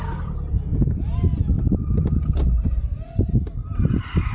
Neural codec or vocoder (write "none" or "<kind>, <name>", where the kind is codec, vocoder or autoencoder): none